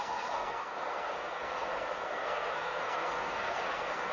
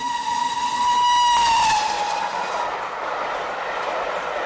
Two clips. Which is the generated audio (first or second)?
first